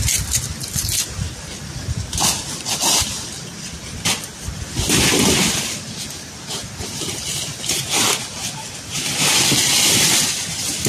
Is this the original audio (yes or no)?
yes